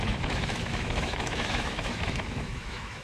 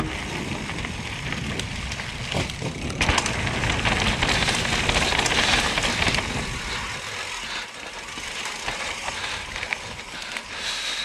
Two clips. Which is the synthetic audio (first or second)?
first